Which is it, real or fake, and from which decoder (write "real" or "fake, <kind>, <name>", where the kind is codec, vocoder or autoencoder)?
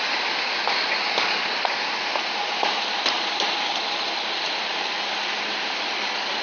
real